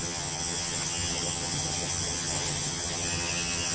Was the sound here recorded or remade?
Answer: remade